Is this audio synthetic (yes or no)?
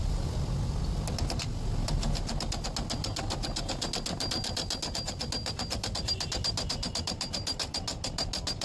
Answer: no